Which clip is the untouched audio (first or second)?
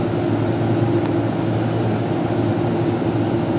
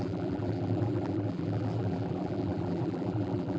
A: first